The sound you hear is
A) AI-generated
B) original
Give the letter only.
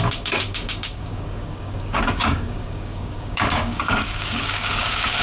A